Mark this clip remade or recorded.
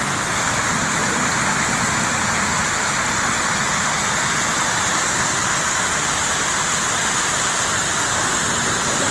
recorded